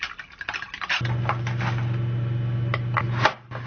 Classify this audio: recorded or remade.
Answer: recorded